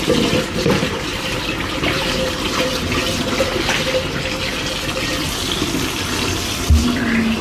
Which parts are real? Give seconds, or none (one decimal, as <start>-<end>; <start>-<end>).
0.0-1.1; 3.3-7.4